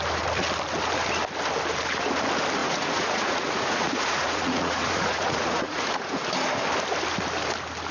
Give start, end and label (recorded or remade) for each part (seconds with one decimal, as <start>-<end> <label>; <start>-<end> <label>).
0.0-2.6 recorded; 2.6-6.2 remade; 6.2-7.9 recorded